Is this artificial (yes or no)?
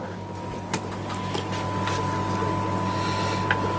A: no